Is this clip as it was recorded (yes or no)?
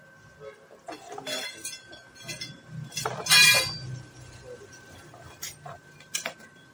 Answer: yes